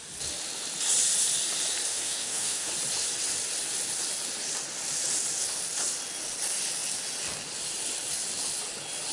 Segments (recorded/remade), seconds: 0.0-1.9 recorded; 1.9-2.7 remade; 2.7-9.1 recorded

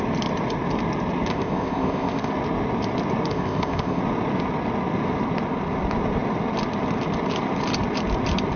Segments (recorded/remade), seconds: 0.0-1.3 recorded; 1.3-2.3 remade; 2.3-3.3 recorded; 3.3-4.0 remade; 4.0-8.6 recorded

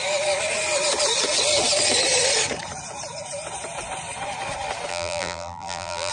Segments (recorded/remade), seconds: 0.0-4.9 recorded; 4.9-6.1 remade